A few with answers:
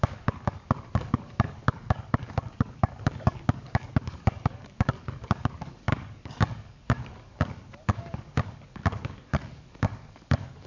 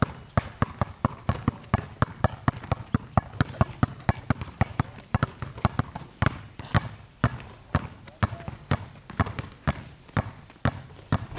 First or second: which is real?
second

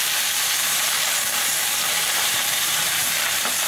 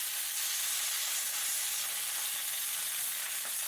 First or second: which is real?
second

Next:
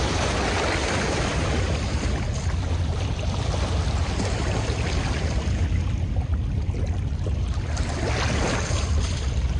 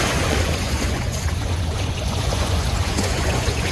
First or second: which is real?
first